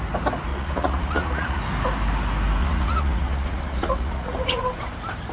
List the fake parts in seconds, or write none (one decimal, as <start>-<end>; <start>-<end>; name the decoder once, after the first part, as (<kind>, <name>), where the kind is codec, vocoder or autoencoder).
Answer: 0.5-1.6 (vocoder, Vocos); 2.6-4.6